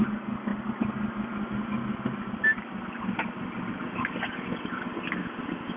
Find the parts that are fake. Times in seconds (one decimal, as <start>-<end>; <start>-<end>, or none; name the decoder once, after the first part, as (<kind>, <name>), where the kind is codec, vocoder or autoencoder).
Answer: none